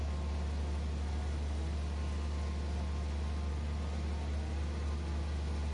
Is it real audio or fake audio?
real